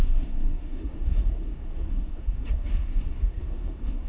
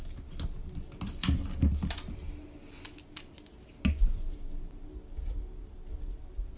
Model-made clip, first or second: first